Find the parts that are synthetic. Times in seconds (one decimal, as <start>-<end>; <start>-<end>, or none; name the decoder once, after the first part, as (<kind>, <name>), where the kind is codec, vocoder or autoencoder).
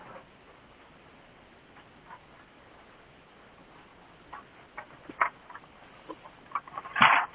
none